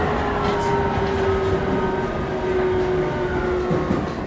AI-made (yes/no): no